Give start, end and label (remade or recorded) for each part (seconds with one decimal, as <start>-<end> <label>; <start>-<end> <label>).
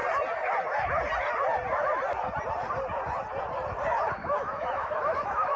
0.0-4.2 recorded; 4.2-5.6 remade